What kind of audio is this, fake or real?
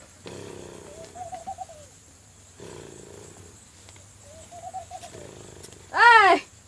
real